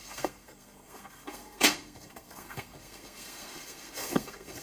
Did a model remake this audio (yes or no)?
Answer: yes